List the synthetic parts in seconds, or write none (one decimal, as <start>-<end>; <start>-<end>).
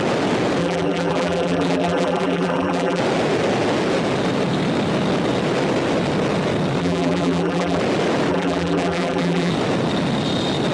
0.6-3.0; 6.8-7.8; 8.3-9.5